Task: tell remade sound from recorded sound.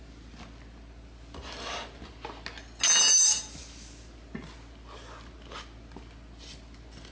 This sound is recorded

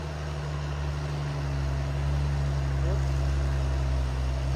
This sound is recorded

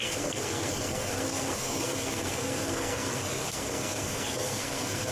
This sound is remade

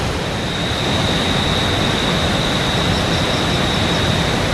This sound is recorded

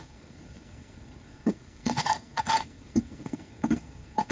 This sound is remade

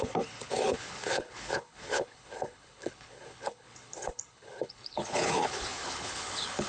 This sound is remade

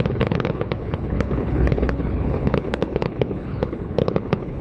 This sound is remade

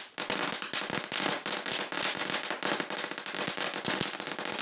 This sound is recorded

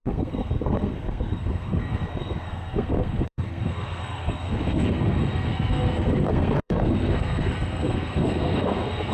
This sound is remade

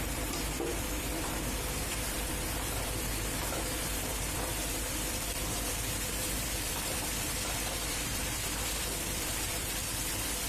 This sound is remade